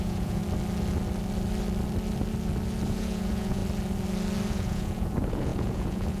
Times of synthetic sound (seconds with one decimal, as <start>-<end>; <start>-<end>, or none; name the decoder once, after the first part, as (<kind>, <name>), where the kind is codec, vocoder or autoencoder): 0.0-0.4 (vocoder, Vocos); 2.9-3.6; 4.5-6.2